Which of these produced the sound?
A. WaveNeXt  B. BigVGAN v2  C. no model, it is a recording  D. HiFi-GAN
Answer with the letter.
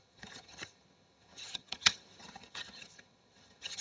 D